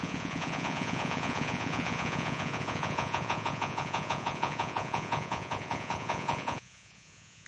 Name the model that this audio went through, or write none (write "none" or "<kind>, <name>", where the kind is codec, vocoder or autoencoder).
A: vocoder, Vocos